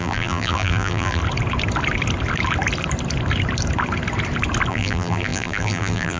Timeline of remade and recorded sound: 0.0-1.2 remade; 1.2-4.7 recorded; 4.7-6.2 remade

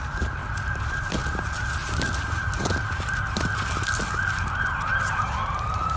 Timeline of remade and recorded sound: 0.0-1.8 recorded; 1.8-2.3 remade; 2.3-6.0 recorded

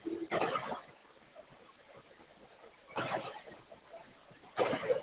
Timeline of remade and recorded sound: 0.0-1.0 recorded; 1.0-3.6 remade; 3.6-5.0 recorded

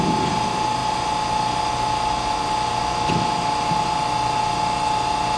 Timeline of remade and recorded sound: 0.0-5.4 recorded

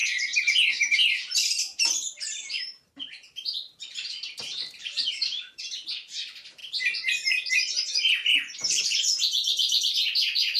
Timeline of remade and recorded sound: 0.0-10.6 remade